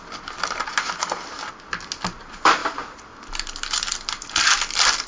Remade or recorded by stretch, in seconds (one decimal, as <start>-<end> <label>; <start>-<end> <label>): 0.0-5.1 recorded